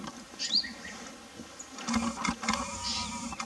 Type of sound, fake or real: real